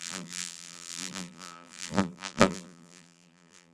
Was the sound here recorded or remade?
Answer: remade